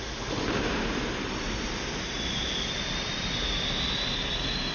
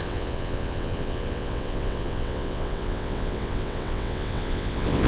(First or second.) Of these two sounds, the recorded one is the first